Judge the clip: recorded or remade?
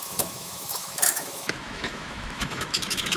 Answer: remade